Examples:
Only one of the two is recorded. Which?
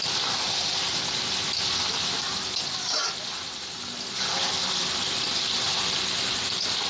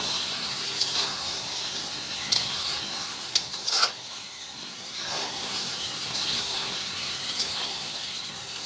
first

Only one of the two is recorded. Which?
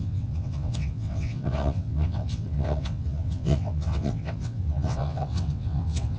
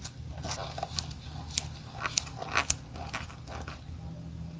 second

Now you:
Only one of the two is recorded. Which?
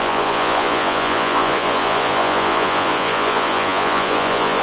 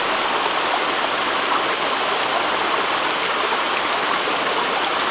second